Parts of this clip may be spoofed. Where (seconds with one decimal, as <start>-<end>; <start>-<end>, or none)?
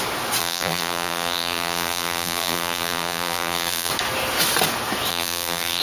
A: 0.4-3.9; 5.1-5.8